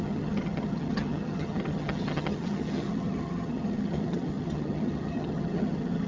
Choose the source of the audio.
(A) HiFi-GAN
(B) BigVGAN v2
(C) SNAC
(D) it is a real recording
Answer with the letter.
A